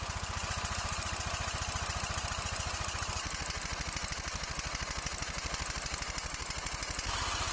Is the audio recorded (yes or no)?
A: yes